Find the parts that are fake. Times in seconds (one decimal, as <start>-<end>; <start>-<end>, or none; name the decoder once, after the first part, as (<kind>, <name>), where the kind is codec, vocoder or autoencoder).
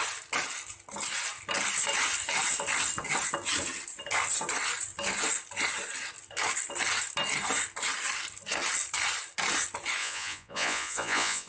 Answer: 10.0-11.5 (vocoder, Vocos)